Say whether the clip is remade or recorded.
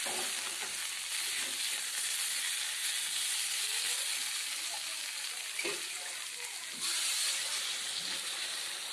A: recorded